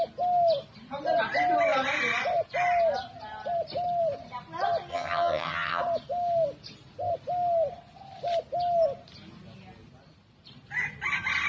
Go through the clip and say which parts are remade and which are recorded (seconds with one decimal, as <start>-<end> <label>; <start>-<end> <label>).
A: 0.0-4.9 recorded; 4.9-5.8 remade; 5.8-11.5 recorded